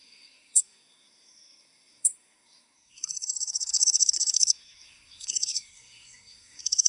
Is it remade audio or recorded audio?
remade